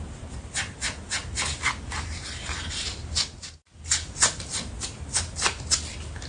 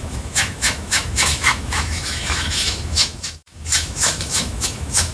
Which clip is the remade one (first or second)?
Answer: second